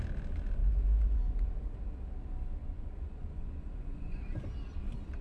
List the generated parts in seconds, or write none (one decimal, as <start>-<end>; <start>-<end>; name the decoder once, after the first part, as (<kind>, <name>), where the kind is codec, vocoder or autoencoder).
0.6-1.4 (vocoder, Vocos); 2.6-4.2